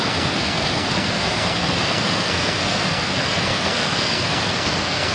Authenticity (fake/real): fake